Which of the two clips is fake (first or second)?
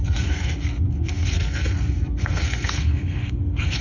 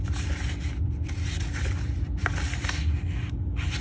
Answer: first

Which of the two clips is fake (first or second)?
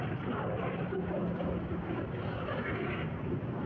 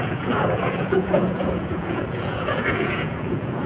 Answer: second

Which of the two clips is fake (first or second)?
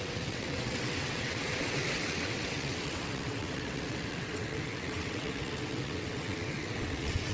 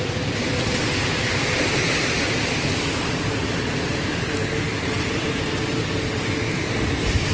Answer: first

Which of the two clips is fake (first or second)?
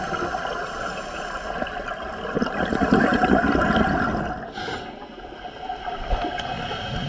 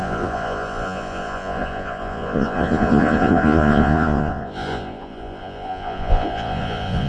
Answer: second